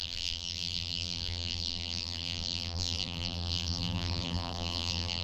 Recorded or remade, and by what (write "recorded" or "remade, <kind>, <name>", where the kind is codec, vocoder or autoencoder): remade, vocoder, BigVGAN v2